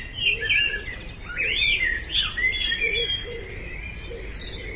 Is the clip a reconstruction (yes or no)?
no